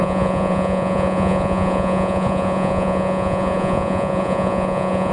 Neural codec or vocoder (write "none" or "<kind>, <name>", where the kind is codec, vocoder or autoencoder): vocoder, Vocos